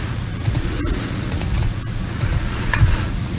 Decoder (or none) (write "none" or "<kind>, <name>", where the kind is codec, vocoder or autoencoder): vocoder, Vocos